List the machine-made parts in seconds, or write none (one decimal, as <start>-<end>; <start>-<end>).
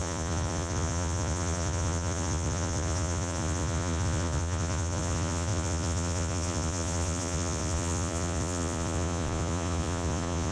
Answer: 0.0-10.5